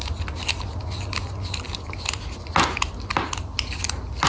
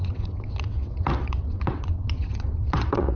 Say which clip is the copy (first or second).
second